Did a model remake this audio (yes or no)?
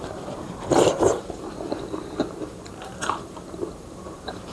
yes